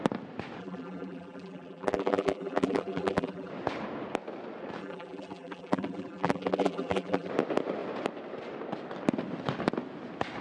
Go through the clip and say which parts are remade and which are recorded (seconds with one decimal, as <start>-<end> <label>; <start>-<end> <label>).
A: 0.0-0.6 recorded; 0.6-3.5 remade; 3.5-4.8 recorded; 4.8-7.3 remade; 7.3-10.4 recorded